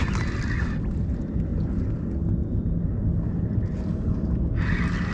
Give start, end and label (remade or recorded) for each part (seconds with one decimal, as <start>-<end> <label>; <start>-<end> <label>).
0.0-5.1 recorded